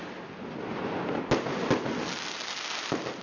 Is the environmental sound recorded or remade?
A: recorded